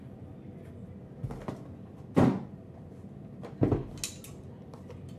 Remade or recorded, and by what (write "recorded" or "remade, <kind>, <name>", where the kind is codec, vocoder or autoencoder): recorded